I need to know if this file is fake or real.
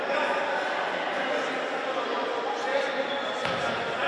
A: real